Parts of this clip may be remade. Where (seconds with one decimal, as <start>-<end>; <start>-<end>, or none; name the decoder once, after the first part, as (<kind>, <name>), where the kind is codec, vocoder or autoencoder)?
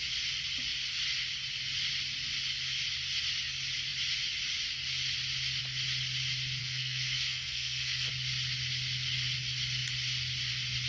6.6-8.1 (codec, SNAC)